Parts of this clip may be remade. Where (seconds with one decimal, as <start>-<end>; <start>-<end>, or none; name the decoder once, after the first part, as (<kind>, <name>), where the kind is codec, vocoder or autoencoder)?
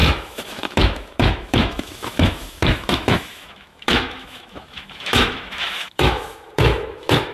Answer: 0.0-7.3 (autoencoder, DAC-VAE)